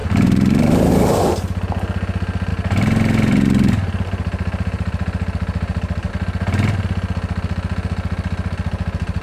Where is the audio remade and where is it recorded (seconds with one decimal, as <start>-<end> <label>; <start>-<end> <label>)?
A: 0.0-0.9 remade; 0.9-2.5 recorded; 2.5-6.1 remade; 6.1-9.2 recorded